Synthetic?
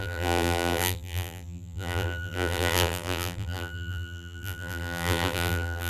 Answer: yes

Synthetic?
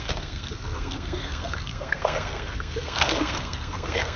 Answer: yes